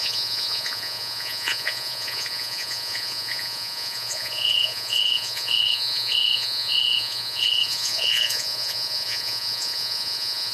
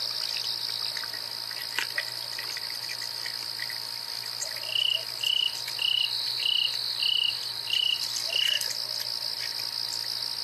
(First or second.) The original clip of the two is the second